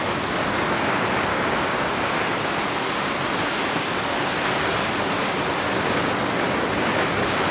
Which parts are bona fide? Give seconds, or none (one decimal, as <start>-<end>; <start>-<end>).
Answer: 0.0-1.3; 1.9-7.5

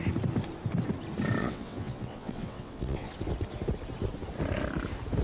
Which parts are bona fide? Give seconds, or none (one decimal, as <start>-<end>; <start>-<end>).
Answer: 0.0-1.4; 3.1-5.2

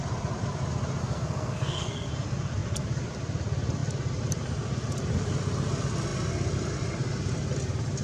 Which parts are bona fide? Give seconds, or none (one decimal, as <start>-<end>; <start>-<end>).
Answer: 0.0-1.0; 2.1-8.0

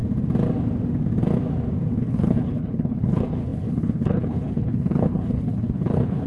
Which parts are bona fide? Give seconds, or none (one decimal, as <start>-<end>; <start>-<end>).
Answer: 0.0-2.0

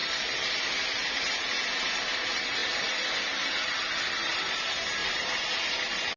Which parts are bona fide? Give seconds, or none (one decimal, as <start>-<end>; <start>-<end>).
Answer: 0.0-6.2

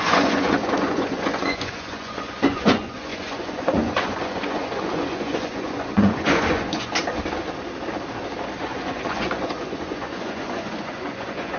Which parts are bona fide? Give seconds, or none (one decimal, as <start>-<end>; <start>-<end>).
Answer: 6.9-8.6

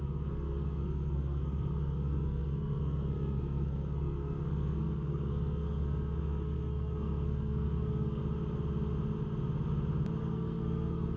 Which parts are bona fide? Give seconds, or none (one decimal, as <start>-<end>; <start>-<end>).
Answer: 8.2-10.2